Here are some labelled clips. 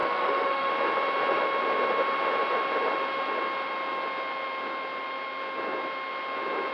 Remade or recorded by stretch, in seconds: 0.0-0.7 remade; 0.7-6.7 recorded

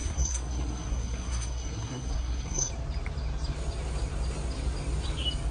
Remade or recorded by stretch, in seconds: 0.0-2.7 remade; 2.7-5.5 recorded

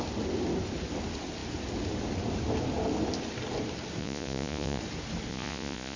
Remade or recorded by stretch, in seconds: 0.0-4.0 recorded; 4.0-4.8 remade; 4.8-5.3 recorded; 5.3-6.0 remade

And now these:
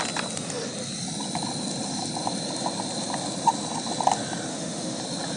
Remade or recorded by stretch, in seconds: 0.0-4.5 recorded; 4.5-5.0 remade; 5.0-5.4 recorded

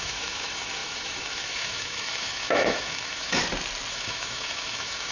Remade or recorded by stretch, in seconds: 0.0-3.4 remade; 3.4-3.9 recorded; 3.9-5.1 remade

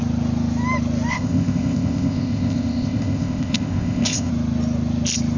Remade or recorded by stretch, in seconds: 0.0-1.1 recorded; 1.1-4.3 remade; 4.3-5.4 recorded